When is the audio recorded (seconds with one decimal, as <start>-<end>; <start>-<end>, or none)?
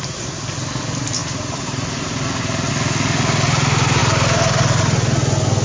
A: 0.0-1.2; 2.7-5.6